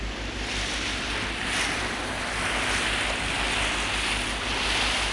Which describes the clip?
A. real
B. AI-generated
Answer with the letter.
A